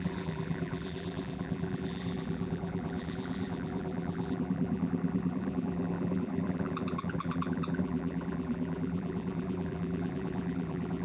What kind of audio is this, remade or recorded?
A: remade